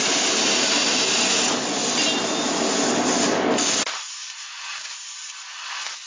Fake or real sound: real